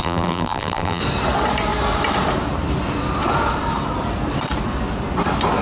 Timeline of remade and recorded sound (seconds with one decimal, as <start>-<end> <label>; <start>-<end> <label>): 0.0-1.0 remade; 1.0-5.6 recorded